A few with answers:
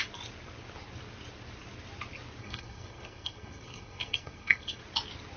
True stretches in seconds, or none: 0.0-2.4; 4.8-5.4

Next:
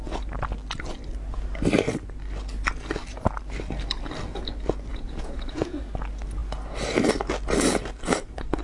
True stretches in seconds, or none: 0.0-4.9; 5.8-8.6

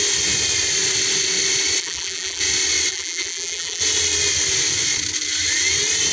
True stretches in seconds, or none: 0.0-1.8; 2.4-2.9; 3.8-6.1

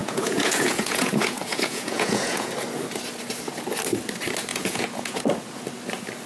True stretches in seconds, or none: 2.5-4.5; 5.2-6.3